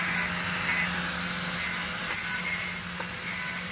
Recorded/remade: recorded